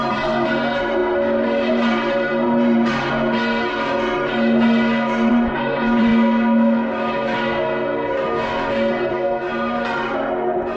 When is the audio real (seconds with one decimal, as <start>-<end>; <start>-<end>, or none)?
1.0-1.7; 3.1-5.3; 6.1-8.9